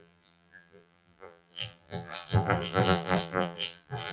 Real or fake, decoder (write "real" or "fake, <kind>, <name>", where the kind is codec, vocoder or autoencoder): fake, vocoder, BigVGAN v2